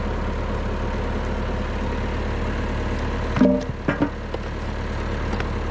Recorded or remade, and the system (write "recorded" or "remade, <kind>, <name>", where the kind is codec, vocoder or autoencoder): recorded